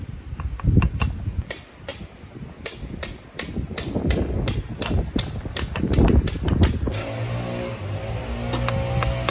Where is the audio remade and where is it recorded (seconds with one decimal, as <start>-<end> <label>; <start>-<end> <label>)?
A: 0.0-9.3 recorded